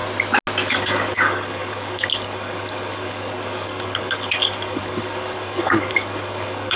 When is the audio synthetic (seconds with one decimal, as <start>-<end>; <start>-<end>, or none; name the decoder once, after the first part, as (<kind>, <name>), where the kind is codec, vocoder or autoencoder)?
0.7-6.8 (codec, DAC)